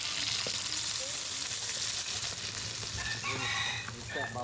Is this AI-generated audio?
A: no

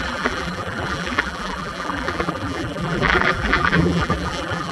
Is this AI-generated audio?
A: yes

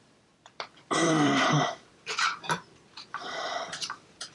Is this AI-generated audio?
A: yes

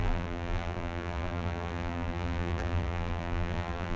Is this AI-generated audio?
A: yes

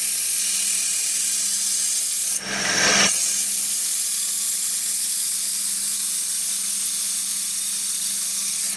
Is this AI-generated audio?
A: no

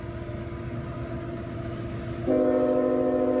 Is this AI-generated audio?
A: no